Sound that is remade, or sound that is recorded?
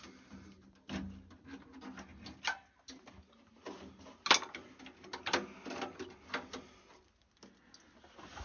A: recorded